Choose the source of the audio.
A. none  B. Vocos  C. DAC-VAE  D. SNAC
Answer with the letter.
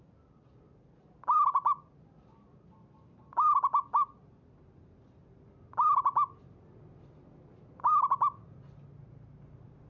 A